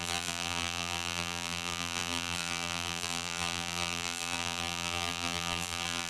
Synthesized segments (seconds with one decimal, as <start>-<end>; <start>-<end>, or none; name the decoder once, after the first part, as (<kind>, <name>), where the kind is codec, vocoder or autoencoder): 0.0-6.1 (vocoder, BigVGAN v2)